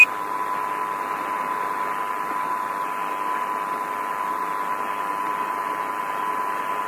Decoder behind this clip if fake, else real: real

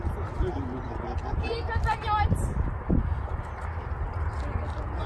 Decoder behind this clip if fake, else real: real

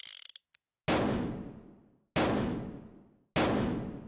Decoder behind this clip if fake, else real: real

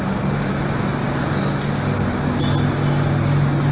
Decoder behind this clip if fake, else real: real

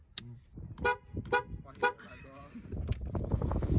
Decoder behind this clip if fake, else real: real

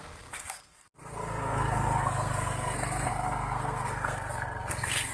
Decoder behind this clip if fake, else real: fake, codec, SNAC